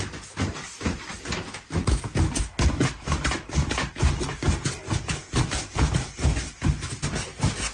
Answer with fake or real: real